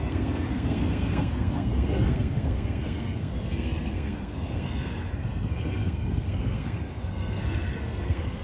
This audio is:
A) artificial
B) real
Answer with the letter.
A